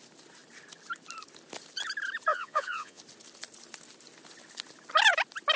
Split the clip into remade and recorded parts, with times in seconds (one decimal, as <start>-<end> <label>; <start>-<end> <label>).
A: 0.0-2.3 recorded; 2.3-3.0 remade; 3.0-5.6 recorded